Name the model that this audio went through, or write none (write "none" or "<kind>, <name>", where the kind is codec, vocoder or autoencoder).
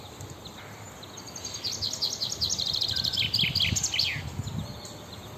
none